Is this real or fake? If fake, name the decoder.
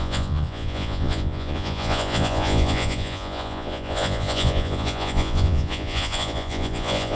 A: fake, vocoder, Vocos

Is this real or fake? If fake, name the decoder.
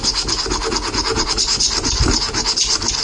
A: real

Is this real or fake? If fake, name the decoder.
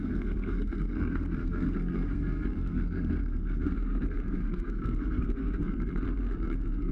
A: fake, codec, SNAC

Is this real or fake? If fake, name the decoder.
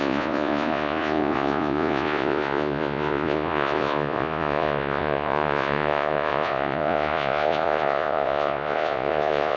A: fake, vocoder, Vocos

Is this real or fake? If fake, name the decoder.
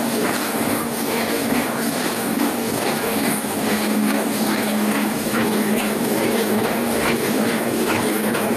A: fake, codec, DAC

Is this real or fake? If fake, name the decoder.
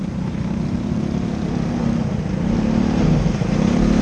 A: real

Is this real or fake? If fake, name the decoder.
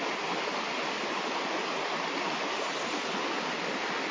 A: real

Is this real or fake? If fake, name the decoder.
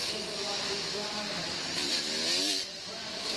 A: real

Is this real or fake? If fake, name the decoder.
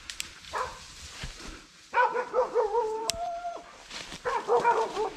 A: fake, vocoder, BigVGAN v2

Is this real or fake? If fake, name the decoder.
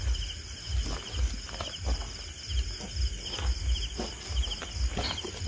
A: real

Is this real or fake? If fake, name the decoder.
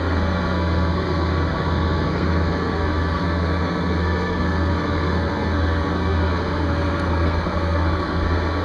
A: fake, codec, SNAC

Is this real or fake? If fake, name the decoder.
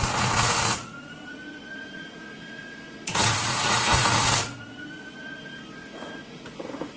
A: fake, vocoder, Vocos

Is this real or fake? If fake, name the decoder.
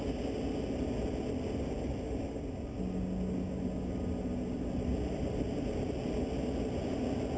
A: real